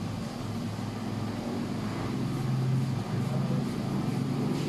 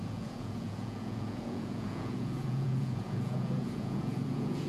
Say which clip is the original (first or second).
first